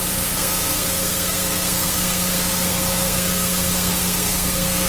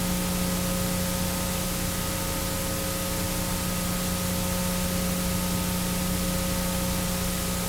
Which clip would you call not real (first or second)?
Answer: first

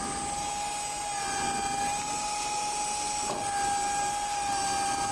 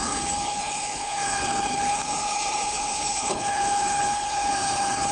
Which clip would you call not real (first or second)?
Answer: second